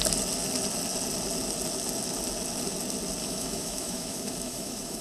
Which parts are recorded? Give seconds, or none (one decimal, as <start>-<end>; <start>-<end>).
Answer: 0.0-3.2